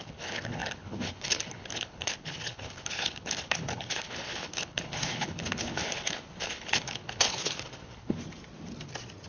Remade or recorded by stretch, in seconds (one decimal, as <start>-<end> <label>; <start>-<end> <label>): 0.0-8.2 remade; 8.2-9.3 recorded